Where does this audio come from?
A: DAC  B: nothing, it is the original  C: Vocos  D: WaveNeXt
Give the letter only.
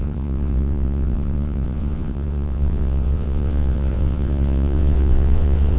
D